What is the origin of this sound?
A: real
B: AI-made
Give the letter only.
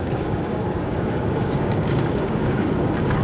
B